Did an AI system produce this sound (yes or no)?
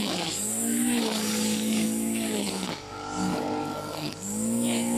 yes